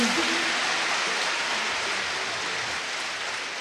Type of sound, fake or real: real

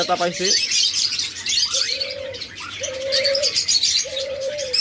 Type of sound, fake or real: fake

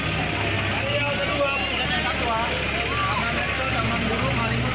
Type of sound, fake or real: real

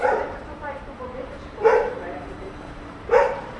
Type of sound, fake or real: fake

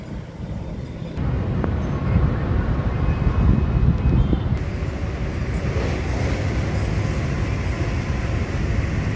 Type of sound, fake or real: real